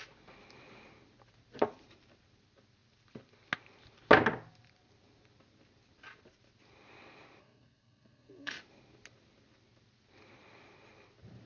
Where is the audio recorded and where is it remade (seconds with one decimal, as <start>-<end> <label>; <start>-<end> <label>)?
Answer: 0.0-7.4 recorded; 7.4-8.5 remade; 8.5-11.5 recorded